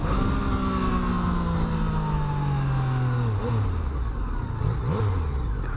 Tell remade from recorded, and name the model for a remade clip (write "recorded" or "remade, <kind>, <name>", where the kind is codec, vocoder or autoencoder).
recorded